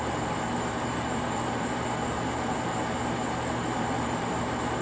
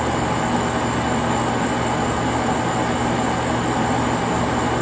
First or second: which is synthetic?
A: first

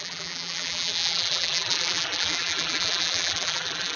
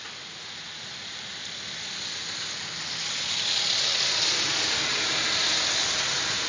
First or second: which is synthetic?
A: first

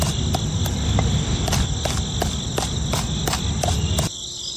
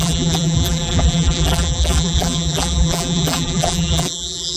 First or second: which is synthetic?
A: second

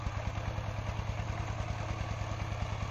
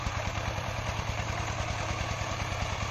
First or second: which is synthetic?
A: second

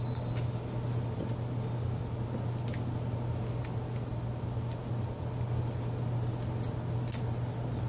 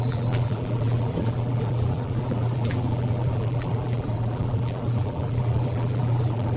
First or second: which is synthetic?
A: second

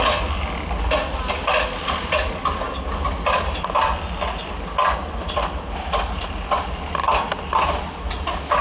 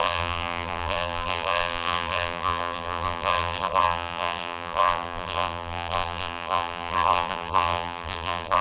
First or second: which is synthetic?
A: second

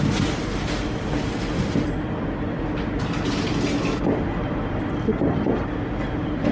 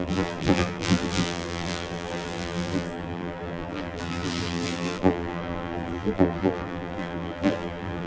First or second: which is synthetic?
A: second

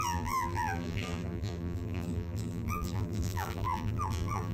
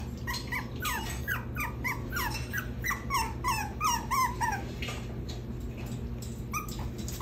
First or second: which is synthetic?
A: first